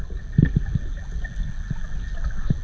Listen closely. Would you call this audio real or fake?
real